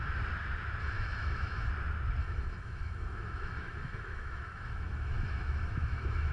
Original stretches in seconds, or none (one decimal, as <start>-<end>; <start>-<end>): 0.0-0.8; 1.7-2.2